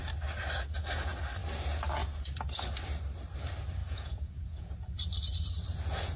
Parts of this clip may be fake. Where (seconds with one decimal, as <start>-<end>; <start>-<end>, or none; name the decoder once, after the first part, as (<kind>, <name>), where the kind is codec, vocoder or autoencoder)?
3.8-4.7 (vocoder, Vocos)